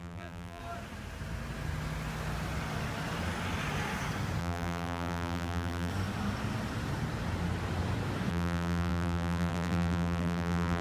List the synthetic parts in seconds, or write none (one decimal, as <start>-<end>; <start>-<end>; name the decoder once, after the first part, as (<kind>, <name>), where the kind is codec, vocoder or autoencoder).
0.0-0.6 (vocoder, BigVGAN v2); 4.4-5.9; 8.3-10.8